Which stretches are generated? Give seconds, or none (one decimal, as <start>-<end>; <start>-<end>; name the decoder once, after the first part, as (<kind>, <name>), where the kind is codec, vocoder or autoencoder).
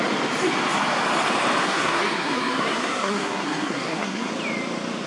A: 1.6-4.3 (codec, SNAC)